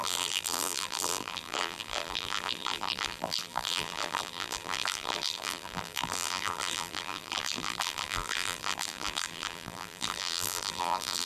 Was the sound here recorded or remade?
remade